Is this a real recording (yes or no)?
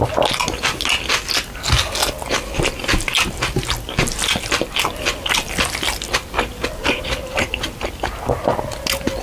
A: yes